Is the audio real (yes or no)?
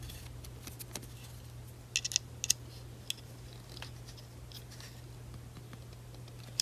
yes